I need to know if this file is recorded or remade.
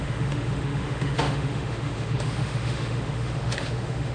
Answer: remade